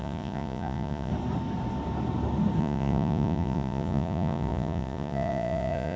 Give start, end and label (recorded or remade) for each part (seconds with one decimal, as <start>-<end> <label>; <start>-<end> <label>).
0.0-1.1 remade; 1.1-2.6 recorded; 2.6-6.0 remade